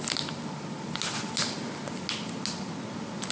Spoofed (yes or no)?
no